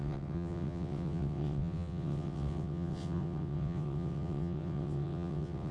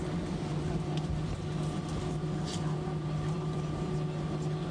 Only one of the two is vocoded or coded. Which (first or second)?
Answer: first